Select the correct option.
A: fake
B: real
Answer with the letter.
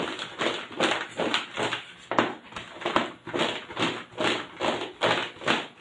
B